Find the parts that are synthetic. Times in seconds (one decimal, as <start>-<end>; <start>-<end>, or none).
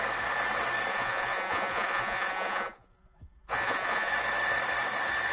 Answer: 0.9-4.1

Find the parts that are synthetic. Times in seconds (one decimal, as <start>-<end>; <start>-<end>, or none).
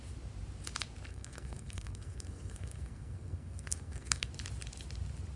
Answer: 1.1-4.3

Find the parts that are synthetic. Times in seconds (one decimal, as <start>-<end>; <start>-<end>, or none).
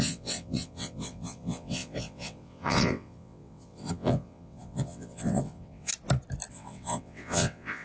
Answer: 0.0-5.9; 6.5-7.8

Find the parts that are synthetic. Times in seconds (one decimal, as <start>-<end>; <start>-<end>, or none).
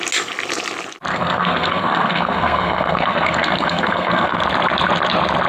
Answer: 1.1-4.4